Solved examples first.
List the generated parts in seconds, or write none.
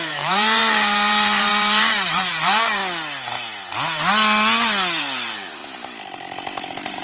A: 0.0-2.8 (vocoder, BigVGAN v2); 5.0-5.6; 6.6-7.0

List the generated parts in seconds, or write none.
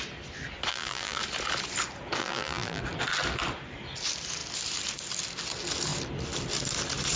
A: 0.7-1.2 (vocoder, BigVGAN v2); 2.2-2.8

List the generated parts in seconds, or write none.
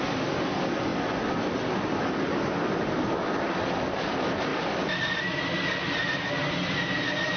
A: none